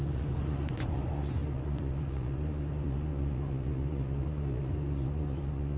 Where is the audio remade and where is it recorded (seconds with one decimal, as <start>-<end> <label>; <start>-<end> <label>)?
0.0-5.8 remade

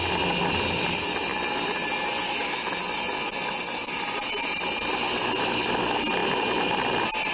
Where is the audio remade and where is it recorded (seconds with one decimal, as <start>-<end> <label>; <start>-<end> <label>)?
0.0-7.3 recorded